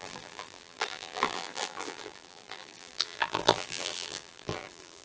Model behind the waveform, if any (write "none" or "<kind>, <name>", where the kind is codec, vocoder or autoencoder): vocoder, BigVGAN v2